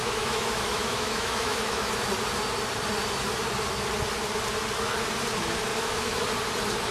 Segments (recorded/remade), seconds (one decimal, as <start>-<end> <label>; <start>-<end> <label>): 0.0-1.9 remade; 1.9-5.7 recorded; 5.7-6.2 remade; 6.2-6.9 recorded